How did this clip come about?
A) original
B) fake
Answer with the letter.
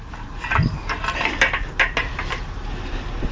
A